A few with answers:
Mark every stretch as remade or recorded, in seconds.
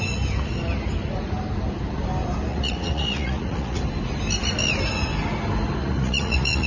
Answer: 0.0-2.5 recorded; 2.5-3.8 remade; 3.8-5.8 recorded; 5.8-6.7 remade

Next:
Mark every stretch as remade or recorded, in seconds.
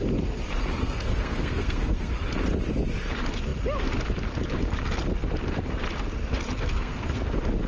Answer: 0.0-0.8 recorded; 0.8-2.1 remade; 2.1-6.7 recorded; 6.7-7.2 remade; 7.2-7.7 recorded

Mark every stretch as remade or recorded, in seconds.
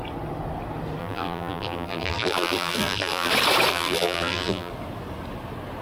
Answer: 0.0-1.0 recorded; 1.0-3.3 remade; 3.3-3.7 recorded; 3.7-4.7 remade; 4.7-5.8 recorded